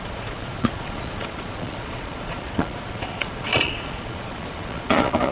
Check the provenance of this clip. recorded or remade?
remade